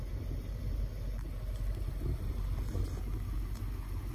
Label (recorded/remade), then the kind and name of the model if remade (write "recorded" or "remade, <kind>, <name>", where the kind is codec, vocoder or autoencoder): recorded